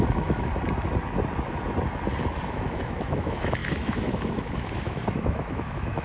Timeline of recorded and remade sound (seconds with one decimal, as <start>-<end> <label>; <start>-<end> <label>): 0.0-0.5 remade; 0.5-2.5 recorded; 2.5-6.0 remade